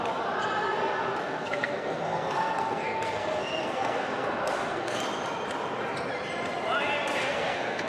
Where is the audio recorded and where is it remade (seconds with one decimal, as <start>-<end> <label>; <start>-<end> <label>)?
0.0-1.2 recorded; 1.2-5.0 remade; 5.0-7.2 recorded; 7.2-7.9 remade